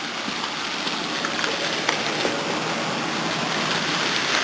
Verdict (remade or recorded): recorded